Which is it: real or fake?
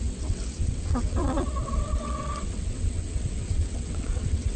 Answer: fake